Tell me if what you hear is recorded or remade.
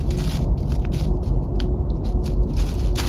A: recorded